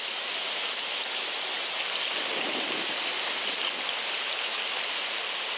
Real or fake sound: real